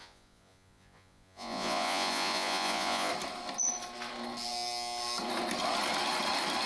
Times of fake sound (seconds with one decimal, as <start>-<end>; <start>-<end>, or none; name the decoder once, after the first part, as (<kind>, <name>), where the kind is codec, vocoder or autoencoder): 0.0-3.1 (vocoder, Vocos)